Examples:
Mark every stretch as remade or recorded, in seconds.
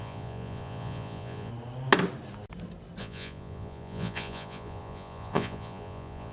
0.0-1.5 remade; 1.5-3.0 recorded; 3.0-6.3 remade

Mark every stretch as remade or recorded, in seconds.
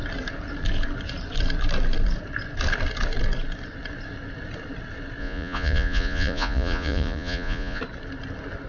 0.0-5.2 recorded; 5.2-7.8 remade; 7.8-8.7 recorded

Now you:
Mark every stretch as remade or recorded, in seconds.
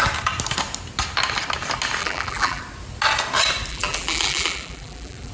0.0-2.0 recorded; 2.0-2.6 remade; 2.6-3.7 recorded; 3.7-5.3 remade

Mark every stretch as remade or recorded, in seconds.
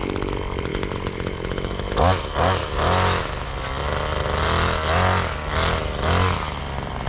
0.0-0.7 recorded; 0.7-2.0 remade; 2.0-2.6 recorded; 2.6-3.5 remade; 3.5-7.1 recorded